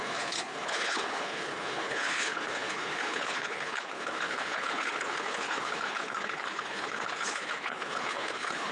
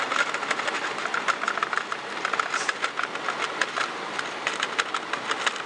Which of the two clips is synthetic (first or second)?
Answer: first